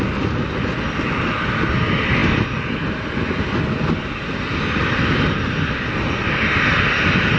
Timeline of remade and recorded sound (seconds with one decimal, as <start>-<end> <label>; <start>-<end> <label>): 0.0-7.4 recorded